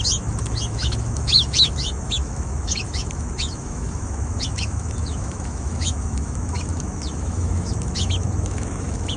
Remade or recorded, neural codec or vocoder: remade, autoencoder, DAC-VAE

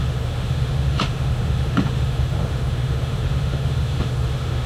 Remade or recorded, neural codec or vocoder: remade, autoencoder, DAC-VAE